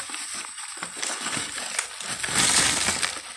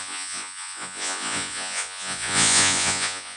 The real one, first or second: first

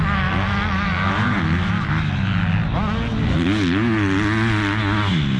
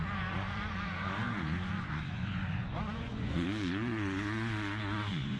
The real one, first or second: first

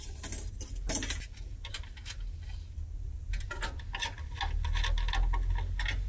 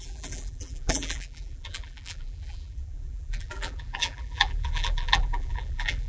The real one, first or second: first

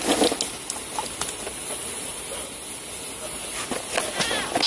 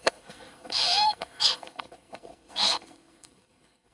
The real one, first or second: first